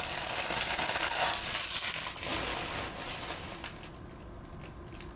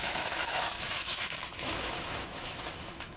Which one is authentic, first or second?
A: first